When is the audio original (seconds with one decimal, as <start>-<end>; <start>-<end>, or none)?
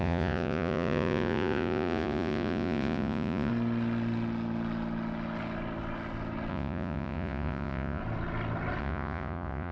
3.5-6.5; 8.0-8.8